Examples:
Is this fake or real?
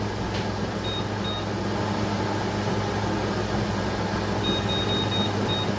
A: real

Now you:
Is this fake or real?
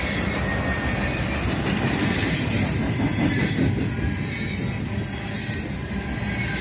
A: real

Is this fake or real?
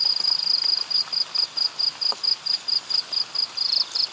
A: real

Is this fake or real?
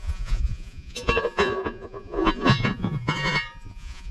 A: fake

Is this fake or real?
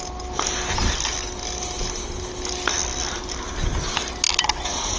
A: real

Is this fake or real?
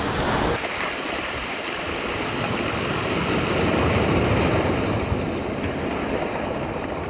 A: real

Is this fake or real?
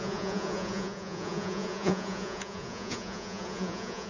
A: fake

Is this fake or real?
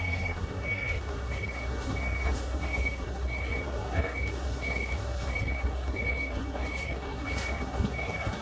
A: fake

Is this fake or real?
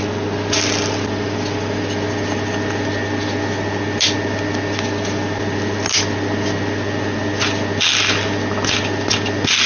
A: real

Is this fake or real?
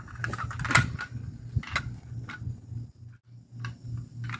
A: real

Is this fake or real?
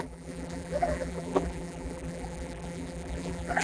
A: fake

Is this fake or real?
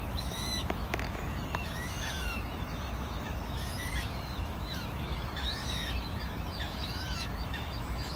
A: fake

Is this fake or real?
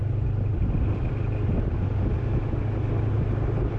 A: real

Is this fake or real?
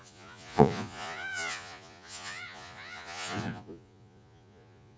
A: fake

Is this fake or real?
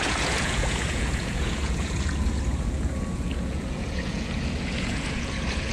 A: fake